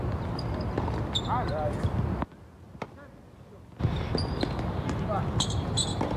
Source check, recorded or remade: recorded